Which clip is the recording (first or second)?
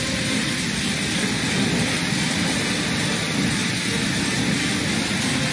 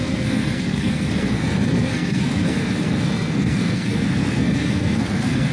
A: first